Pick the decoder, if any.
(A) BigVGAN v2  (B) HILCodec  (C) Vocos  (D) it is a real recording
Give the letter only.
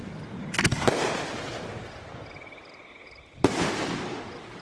D